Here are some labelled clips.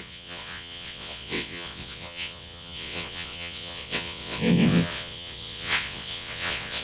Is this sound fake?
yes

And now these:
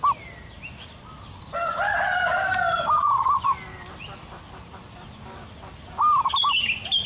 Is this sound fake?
no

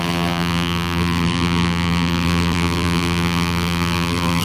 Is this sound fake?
yes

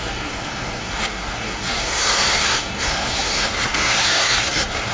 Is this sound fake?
yes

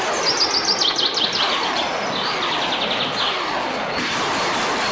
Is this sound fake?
no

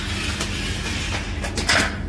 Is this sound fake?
no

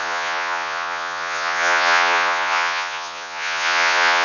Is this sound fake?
yes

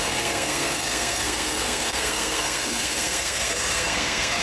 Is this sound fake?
yes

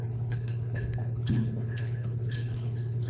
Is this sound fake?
yes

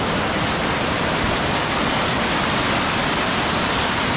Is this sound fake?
no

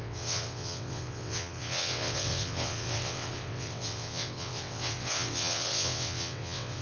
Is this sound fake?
yes